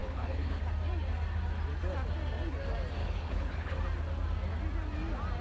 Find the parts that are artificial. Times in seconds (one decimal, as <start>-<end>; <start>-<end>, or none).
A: 0.0-0.6; 3.0-3.8